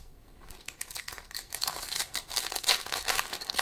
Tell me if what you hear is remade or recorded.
remade